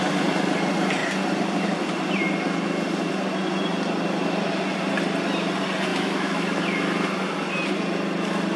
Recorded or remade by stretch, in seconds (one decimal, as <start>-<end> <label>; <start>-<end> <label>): 0.0-5.9 recorded; 5.9-6.6 remade; 6.6-8.6 recorded

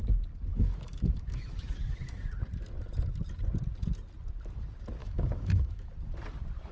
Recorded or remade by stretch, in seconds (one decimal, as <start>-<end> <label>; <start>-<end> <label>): 0.0-0.5 recorded; 0.5-2.2 remade; 2.2-5.0 recorded; 5.0-5.9 remade; 5.9-6.7 recorded

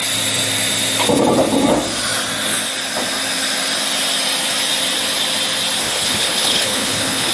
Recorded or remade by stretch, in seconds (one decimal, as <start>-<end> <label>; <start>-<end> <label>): 0.0-5.8 recorded; 5.8-7.3 remade

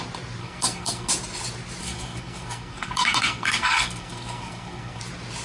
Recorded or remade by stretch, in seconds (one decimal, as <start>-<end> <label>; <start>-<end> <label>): 0.0-0.4 recorded; 0.4-1.1 remade; 1.1-1.8 recorded; 1.8-5.0 remade; 5.0-5.4 recorded